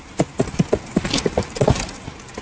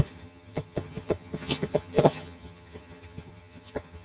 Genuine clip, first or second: first